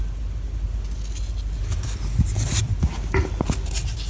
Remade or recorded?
recorded